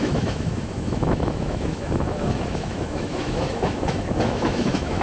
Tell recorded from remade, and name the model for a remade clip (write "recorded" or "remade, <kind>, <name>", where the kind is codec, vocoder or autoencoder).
remade, autoencoder, DAC-VAE